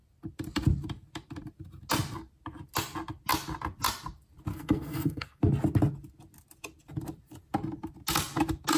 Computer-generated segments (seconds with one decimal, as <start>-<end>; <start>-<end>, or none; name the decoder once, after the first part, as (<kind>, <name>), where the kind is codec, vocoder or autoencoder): 4.5-5.4 (codec, SNAC)